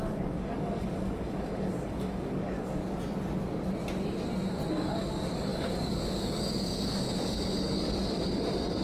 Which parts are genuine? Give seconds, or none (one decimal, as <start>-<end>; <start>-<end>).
2.8-4.7